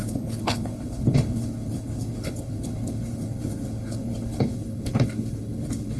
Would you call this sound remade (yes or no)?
yes